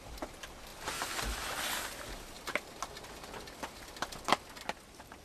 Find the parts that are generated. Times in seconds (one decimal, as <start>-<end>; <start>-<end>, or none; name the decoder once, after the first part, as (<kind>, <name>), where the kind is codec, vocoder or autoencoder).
none